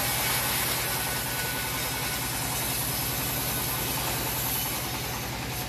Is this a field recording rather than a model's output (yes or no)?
yes